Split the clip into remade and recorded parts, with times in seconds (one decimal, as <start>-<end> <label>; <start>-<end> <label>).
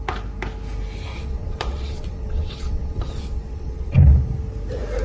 0.0-1.1 recorded; 1.1-4.1 remade; 4.1-5.0 recorded